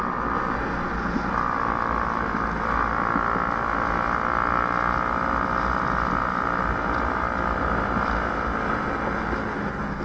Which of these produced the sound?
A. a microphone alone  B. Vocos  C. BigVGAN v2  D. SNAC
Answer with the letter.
A